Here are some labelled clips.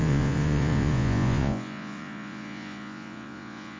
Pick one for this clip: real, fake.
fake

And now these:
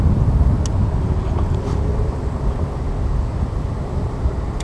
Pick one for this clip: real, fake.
real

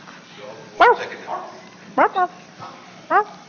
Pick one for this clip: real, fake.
real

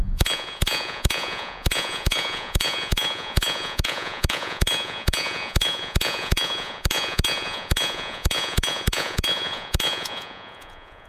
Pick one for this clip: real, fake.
fake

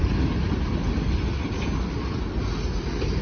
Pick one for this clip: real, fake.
real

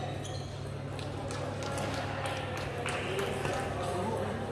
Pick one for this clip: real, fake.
real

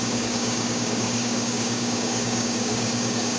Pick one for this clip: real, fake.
fake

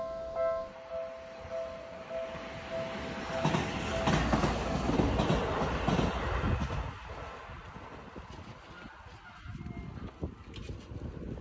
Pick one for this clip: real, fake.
real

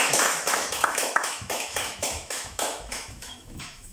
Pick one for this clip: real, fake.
fake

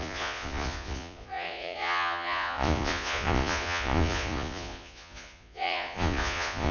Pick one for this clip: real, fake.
fake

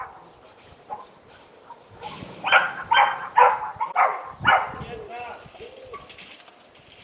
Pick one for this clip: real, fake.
real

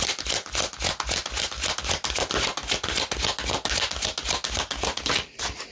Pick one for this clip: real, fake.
real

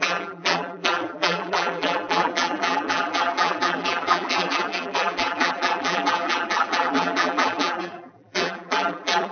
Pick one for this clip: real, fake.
fake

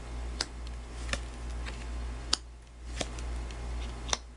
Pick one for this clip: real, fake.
real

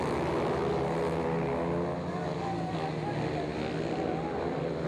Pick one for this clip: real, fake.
real